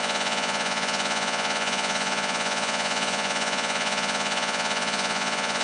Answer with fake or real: fake